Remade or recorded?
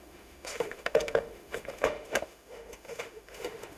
remade